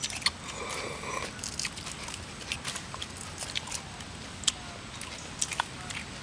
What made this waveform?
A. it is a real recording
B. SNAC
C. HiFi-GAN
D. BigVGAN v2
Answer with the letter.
A